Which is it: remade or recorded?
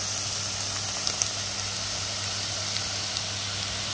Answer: recorded